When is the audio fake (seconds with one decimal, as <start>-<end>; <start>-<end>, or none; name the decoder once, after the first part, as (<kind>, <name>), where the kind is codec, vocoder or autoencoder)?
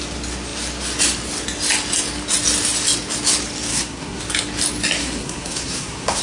3.7-4.2 (codec, SNAC); 5.0-6.2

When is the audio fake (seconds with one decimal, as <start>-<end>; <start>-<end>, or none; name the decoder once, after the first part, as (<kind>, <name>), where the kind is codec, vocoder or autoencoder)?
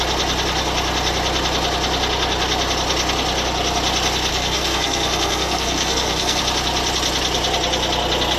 4.3-6.4 (codec, SNAC)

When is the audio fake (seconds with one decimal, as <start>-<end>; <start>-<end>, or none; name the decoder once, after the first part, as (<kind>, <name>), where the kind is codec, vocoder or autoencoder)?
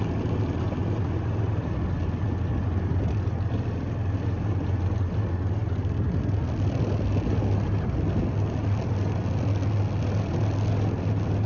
none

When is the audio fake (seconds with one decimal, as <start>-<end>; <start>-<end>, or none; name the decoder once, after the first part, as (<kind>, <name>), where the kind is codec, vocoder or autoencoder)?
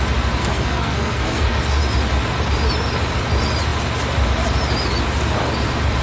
0.4-1.8 (codec, SNAC)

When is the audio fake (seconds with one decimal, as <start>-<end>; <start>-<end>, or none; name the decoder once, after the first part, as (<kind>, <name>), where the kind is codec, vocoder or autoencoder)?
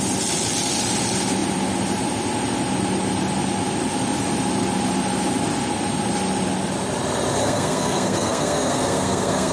7.4-9.5 (codec, SNAC)